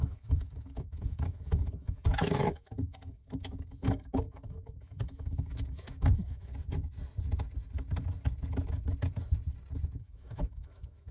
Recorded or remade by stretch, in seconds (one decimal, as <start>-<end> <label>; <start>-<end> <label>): 0.0-6.5 remade; 6.5-10.0 recorded; 10.0-11.1 remade